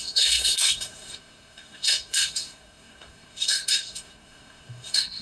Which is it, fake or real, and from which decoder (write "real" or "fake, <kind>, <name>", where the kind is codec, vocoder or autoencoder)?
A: fake, codec, SNAC